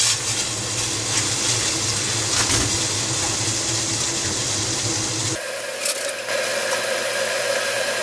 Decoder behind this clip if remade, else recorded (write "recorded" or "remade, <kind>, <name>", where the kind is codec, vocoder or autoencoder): recorded